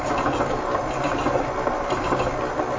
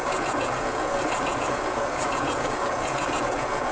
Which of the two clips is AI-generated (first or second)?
second